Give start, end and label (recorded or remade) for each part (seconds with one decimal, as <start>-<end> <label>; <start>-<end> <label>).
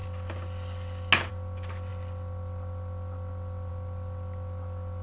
0.0-5.0 recorded